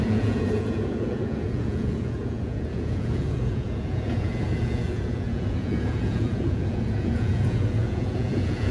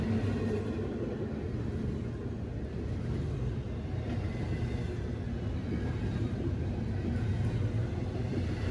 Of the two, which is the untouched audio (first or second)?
second